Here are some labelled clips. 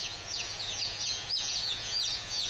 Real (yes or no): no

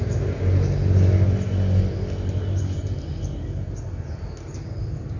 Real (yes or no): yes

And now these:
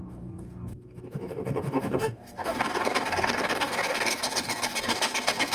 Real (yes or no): no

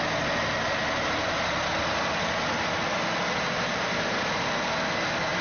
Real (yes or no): yes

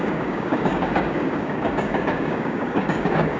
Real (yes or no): no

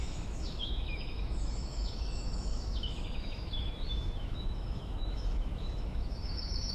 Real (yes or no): no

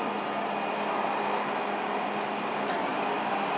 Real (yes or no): yes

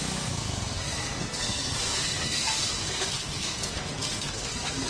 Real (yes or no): no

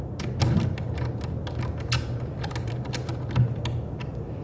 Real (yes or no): yes